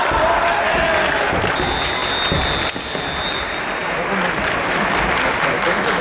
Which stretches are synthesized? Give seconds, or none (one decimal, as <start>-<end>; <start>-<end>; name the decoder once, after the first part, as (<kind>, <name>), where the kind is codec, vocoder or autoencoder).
none